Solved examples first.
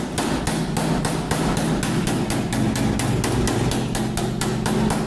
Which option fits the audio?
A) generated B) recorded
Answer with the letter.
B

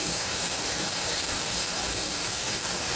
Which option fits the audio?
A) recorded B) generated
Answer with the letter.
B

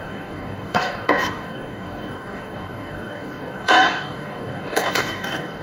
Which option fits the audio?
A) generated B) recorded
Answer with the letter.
A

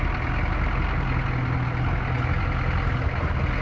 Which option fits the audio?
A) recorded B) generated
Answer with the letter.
A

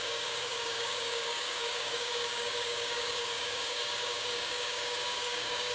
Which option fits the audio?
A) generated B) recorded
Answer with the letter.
A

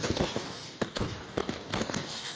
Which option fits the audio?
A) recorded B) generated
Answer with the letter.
B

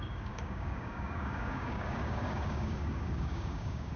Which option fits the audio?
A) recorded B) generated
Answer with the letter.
B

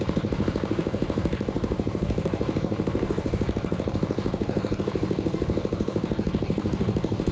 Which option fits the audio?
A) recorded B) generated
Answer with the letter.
B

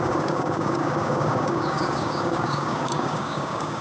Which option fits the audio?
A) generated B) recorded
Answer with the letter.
A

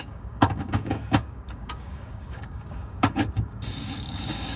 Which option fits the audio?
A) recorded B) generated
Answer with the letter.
B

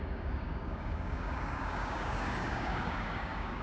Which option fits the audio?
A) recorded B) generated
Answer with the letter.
B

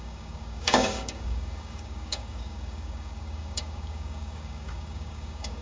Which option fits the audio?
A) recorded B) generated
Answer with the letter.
B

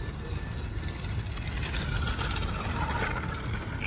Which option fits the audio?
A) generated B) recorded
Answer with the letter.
B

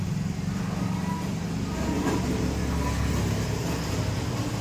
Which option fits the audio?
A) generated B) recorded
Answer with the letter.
B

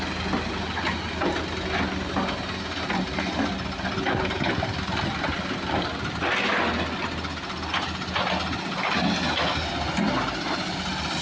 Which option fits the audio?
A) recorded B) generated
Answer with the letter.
A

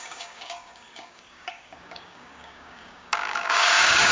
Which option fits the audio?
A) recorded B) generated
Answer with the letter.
B